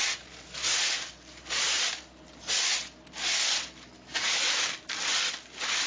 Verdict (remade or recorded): recorded